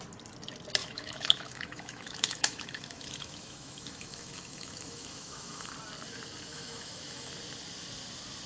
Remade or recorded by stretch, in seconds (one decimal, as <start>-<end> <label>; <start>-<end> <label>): 0.0-0.8 recorded; 0.8-5.7 remade; 5.7-6.5 recorded; 6.5-7.3 remade; 7.3-8.5 recorded